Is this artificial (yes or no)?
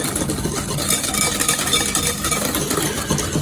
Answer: no